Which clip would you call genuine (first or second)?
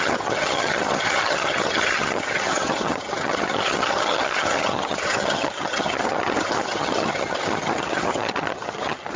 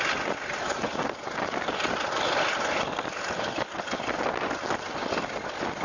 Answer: second